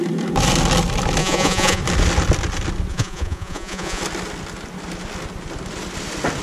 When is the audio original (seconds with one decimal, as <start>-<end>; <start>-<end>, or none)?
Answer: 0.0-1.2; 1.8-2.9; 4.0-6.4